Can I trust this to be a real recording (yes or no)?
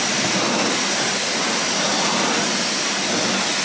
yes